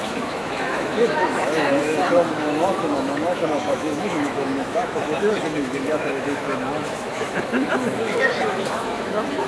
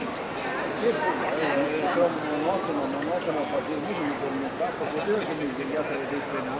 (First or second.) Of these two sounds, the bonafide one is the second